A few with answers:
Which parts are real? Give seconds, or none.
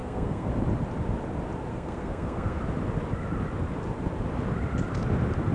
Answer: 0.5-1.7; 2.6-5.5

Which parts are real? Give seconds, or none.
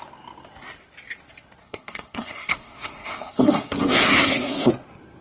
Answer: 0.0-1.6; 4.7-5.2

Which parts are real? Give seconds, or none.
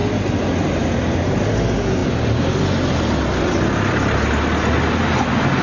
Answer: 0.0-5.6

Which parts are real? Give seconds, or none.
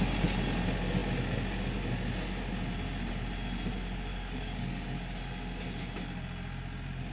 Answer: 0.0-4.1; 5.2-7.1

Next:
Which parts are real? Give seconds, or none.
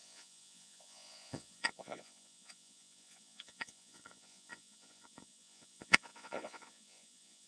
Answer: none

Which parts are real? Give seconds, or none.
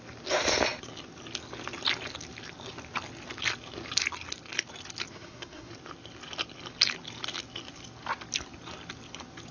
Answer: 0.0-5.1; 5.7-9.5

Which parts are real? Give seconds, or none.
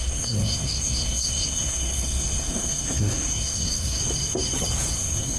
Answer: 4.0-4.9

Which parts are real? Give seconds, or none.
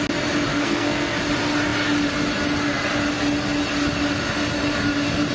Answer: 0.0-0.5; 1.2-5.3